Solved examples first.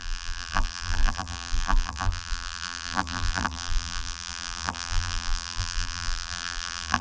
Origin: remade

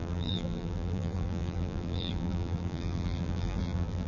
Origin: remade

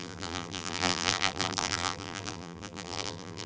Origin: remade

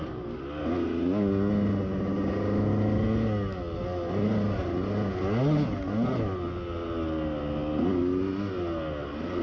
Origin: recorded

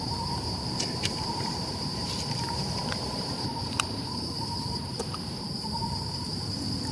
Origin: remade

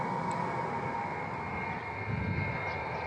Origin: recorded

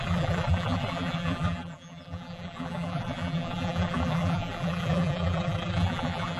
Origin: remade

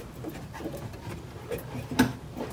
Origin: recorded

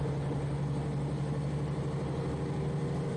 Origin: recorded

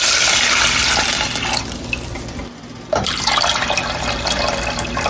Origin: recorded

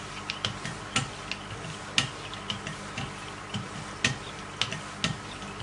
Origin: recorded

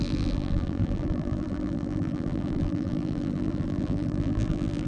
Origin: remade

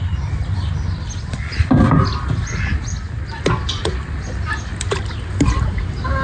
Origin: recorded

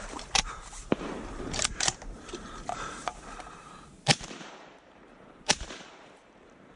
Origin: remade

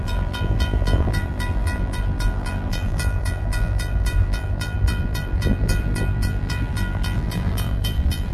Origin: remade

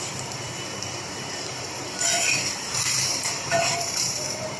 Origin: remade